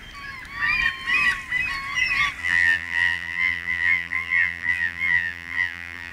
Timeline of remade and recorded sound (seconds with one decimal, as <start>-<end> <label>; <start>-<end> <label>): 0.0-2.4 recorded; 2.4-6.1 remade